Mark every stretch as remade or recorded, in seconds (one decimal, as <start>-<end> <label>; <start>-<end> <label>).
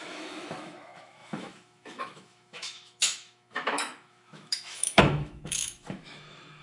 0.0-6.6 remade